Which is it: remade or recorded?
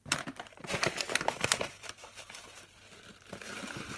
remade